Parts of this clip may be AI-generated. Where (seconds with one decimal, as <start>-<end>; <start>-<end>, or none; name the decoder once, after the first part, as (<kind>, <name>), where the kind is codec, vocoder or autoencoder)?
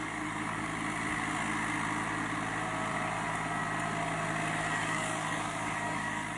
0.0-0.7 (codec, DAC); 4.5-6.4